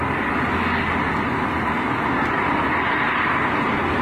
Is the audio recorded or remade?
recorded